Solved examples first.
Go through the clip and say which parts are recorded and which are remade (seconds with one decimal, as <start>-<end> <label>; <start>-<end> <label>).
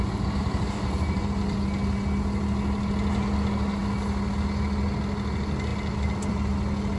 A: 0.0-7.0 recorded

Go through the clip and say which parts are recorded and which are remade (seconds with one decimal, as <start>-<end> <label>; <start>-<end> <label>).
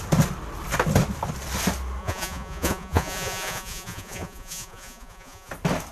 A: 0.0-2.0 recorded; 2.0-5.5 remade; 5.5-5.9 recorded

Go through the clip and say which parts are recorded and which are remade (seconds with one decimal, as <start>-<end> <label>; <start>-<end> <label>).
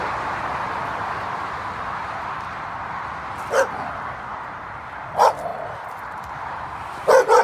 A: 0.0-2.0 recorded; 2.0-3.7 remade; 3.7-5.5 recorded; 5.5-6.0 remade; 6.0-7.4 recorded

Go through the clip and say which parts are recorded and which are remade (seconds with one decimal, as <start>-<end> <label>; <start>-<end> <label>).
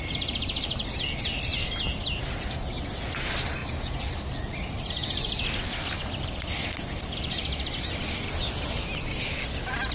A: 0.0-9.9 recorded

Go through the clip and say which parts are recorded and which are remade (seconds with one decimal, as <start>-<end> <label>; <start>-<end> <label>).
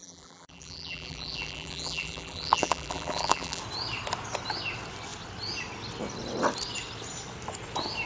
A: 0.0-3.6 remade; 3.6-8.1 recorded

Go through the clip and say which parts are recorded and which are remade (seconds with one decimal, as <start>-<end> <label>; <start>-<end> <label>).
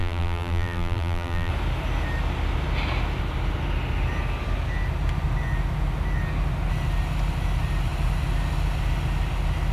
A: 0.0-1.5 remade; 1.5-9.7 recorded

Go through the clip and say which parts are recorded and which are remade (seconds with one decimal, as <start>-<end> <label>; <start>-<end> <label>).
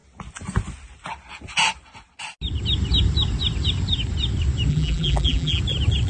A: 0.0-4.7 recorded; 4.7-5.6 remade; 5.6-6.1 recorded